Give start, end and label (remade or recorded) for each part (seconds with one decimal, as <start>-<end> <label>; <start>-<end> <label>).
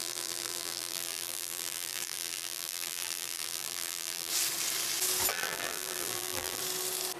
0.0-4.3 remade; 4.3-5.3 recorded; 5.3-6.6 remade; 6.6-7.2 recorded